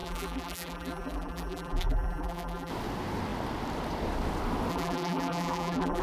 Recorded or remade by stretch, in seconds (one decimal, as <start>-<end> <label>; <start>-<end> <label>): 0.0-2.7 remade; 2.7-4.7 recorded; 4.7-6.0 remade